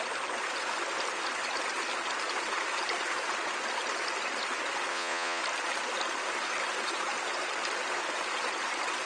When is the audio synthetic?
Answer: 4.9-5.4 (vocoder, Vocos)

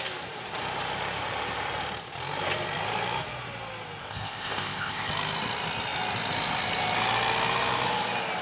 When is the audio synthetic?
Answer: 4.0-5.1 (codec, ZipCodec)

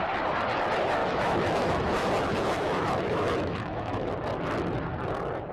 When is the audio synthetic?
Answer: 1.0-4.1 (autoencoder, DAC-VAE)

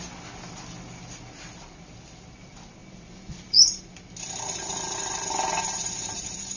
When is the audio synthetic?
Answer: none

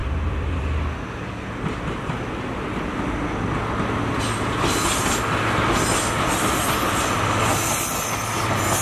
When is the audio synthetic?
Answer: 0.0-0.6 (vocoder, BigVGAN v2)

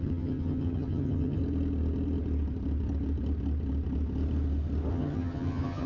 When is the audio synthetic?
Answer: 0.0-1.4 (vocoder, HiFi-GAN); 4.9-5.9

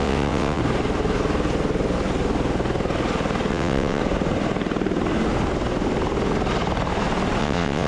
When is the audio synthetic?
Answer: 0.0-0.6 (vocoder, WaveNeXt); 3.5-4.0; 7.4-7.9